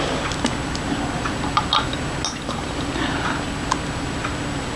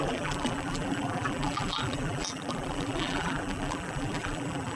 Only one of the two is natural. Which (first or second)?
first